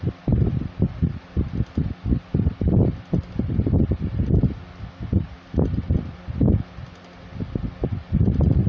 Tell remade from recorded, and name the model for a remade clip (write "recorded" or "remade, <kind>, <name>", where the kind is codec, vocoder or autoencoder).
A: recorded